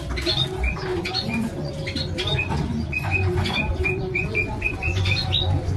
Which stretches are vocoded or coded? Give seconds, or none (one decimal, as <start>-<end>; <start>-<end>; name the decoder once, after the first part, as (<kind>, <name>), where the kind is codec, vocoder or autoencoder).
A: 0.9-1.7 (vocoder, Vocos); 2.3-5.8